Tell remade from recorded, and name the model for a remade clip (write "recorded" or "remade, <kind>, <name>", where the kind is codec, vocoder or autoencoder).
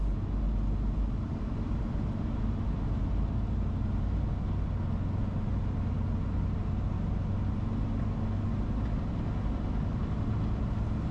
recorded